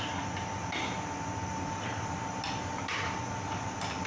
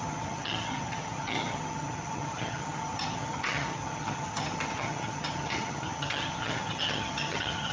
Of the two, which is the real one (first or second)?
first